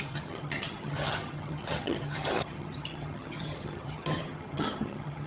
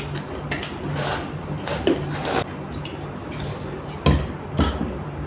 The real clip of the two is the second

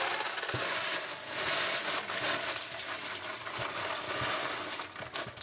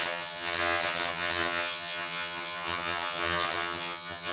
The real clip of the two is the first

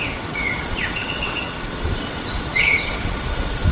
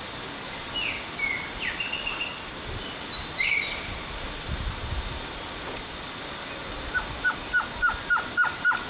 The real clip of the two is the second